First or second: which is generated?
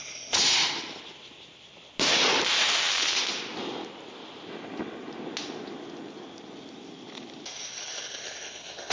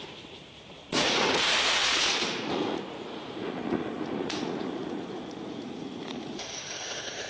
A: second